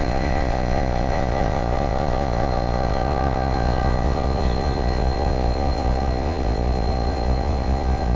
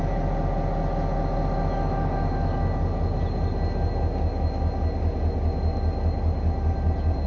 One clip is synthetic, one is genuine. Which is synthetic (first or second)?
first